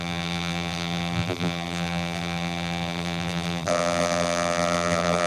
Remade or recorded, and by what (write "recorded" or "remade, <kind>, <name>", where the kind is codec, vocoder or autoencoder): remade, vocoder, BigVGAN v2